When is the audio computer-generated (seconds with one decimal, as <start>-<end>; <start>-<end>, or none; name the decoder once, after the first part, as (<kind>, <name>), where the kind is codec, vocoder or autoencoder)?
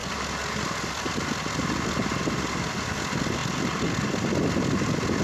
none